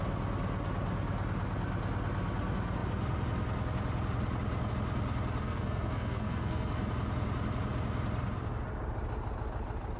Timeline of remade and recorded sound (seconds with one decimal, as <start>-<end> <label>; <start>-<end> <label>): 0.0-5.4 recorded; 5.4-6.7 remade; 6.7-10.0 recorded